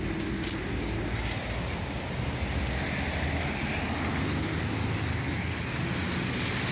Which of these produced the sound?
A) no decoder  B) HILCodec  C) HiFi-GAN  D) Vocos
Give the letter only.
A